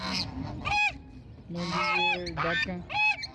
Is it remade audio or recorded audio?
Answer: recorded